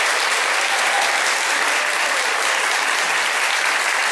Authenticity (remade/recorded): recorded